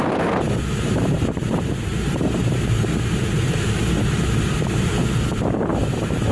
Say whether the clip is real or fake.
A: fake